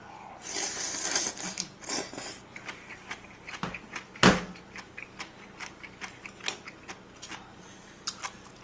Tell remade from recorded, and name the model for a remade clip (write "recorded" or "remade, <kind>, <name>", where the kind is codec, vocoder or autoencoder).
recorded